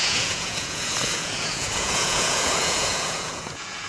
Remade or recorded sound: remade